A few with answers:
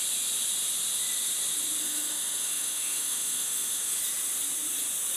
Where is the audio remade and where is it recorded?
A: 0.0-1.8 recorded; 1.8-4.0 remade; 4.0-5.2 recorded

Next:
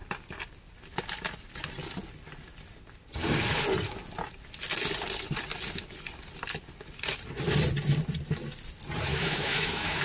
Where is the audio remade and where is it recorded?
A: 0.0-9.1 recorded; 9.1-10.0 remade

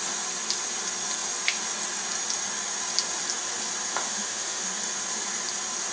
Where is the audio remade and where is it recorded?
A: 0.0-3.9 recorded; 3.9-4.7 remade; 4.7-5.9 recorded

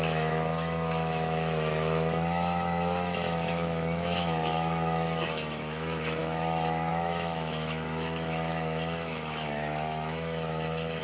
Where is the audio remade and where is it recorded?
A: 0.0-11.0 remade

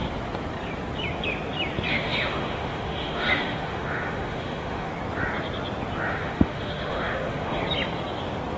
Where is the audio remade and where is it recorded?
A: 0.0-1.9 recorded; 1.9-4.9 remade; 4.9-6.1 recorded; 6.1-7.6 remade; 7.6-8.6 recorded

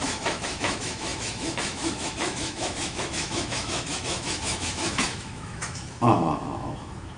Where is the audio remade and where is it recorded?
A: 0.0-7.2 remade